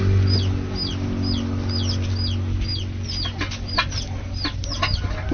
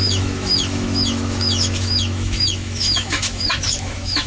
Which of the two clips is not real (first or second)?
second